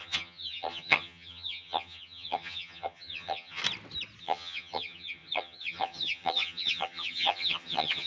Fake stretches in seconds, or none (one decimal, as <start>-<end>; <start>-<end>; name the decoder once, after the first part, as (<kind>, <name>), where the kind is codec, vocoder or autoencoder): 0.0-3.6 (vocoder, HiFi-GAN); 4.2-8.1